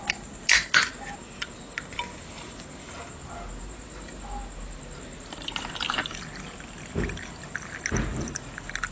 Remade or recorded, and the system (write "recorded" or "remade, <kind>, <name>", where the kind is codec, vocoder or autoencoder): recorded